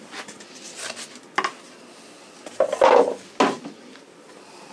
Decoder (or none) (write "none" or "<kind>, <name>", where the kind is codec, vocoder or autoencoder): none